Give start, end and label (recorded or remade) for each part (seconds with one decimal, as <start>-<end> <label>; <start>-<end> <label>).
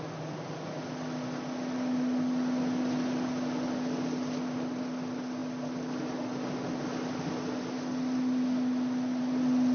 0.0-9.7 recorded